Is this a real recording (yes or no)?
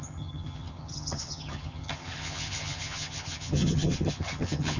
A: no